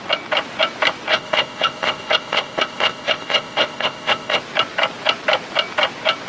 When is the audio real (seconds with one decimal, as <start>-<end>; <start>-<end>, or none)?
0.0-1.1; 4.4-6.3